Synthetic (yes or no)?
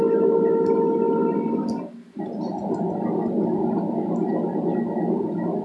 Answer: no